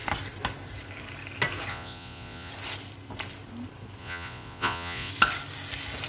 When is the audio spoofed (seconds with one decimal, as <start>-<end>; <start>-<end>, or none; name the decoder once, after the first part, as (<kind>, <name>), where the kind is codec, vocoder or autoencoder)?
1.7-2.5 (vocoder, Vocos); 4.0-5.1

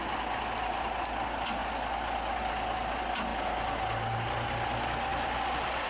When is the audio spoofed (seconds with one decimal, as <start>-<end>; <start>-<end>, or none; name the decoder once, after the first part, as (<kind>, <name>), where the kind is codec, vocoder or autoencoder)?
none

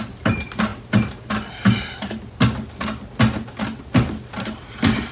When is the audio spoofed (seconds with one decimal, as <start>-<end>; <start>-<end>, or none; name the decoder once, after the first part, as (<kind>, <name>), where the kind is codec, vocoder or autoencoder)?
none

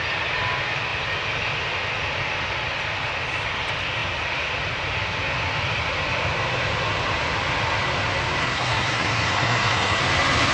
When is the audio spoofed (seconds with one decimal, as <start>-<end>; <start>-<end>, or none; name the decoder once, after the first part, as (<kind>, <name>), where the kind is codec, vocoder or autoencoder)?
8.4-10.0 (codec, SNAC)